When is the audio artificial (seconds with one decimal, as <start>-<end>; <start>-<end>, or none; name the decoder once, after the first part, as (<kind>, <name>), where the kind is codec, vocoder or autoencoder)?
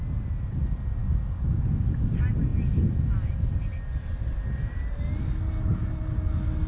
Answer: none